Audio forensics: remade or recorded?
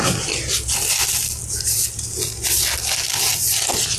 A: recorded